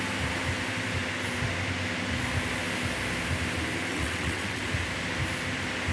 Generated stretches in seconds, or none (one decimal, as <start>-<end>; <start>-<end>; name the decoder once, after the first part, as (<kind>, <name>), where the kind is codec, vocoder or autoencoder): 3.9-4.6 (vocoder, WaveNeXt)